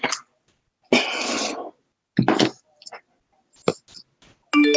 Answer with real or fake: real